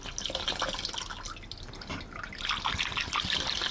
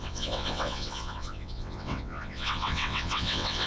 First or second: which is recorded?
first